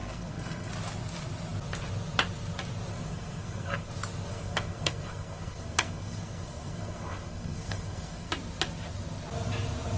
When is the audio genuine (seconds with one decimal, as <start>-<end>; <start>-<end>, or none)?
0.7-2.9; 3.9-4.3; 8.3-10.0